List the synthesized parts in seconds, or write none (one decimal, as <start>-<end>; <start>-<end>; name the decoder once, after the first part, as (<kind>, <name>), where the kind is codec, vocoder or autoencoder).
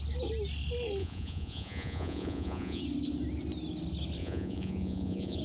1.0-2.8 (vocoder, Vocos); 4.2-5.4